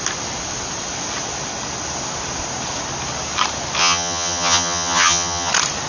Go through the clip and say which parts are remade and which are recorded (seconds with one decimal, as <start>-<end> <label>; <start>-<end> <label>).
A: 0.0-3.8 recorded; 3.8-5.5 remade; 5.5-5.9 recorded